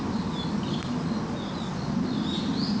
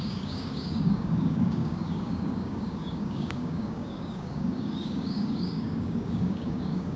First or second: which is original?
first